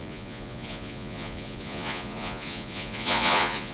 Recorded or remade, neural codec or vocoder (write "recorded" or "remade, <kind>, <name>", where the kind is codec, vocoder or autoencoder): remade, vocoder, Vocos